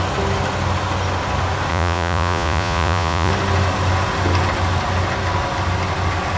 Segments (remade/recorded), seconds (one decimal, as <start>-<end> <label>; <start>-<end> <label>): 0.0-1.7 recorded; 1.7-3.3 remade; 3.3-6.4 recorded